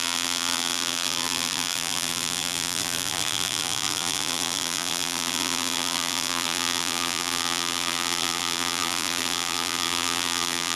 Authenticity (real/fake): fake